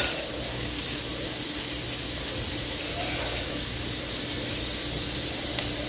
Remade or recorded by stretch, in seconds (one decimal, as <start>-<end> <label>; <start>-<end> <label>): 0.0-0.5 recorded; 0.5-1.0 remade; 1.0-3.3 recorded; 3.3-4.0 remade; 4.0-5.9 recorded